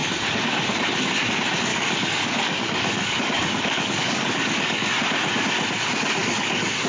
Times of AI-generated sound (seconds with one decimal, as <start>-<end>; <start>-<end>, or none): 0.0-0.5; 1.7-5.0; 6.2-6.9